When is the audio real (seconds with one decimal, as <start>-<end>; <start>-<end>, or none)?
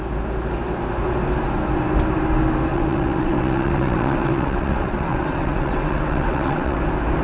0.0-2.7; 6.8-7.2